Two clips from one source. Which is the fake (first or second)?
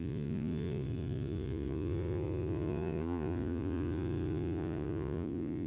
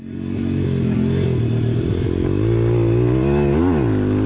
first